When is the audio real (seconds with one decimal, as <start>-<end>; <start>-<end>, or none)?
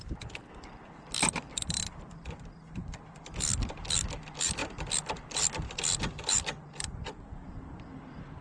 none